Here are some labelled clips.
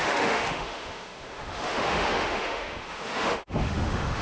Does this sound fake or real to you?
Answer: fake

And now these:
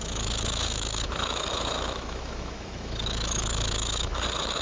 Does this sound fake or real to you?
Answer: fake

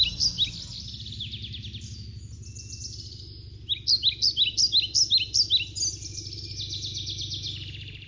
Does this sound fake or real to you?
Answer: real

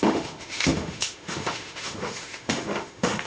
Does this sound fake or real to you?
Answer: fake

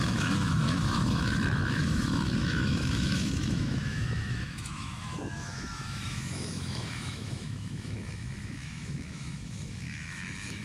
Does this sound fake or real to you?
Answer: fake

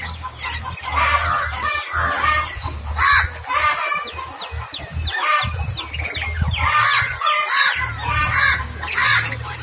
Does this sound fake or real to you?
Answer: real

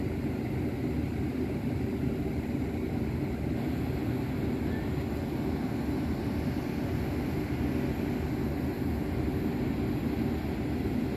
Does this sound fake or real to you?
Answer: real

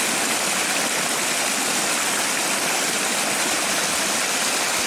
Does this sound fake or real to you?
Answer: real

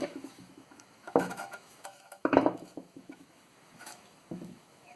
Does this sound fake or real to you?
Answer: fake